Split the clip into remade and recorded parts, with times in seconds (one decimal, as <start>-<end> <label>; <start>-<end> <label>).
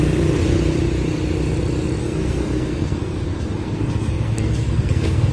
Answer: 0.0-2.0 recorded; 2.0-5.3 remade